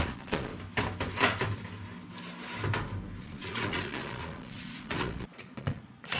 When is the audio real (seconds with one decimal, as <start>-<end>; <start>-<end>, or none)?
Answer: 0.5-3.2